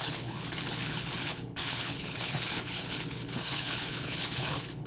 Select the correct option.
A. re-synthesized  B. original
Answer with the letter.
A